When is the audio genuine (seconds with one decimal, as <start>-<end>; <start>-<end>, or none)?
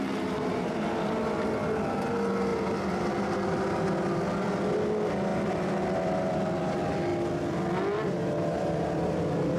0.0-9.6